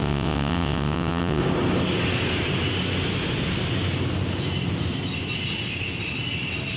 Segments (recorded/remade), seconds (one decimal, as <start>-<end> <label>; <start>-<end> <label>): 0.0-1.4 remade; 1.4-6.8 recorded